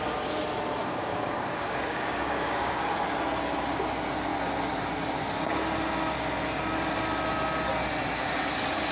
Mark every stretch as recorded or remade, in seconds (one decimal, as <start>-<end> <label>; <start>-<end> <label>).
0.0-0.8 recorded; 0.8-2.9 remade; 2.9-8.9 recorded